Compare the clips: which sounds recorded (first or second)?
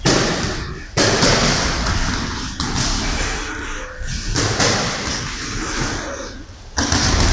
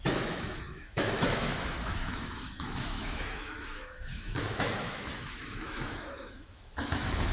first